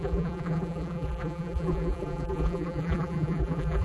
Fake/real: fake